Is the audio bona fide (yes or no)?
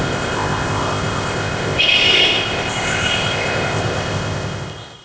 no